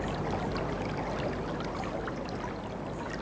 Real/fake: real